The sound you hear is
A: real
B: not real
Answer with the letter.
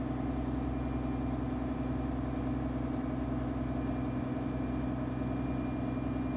A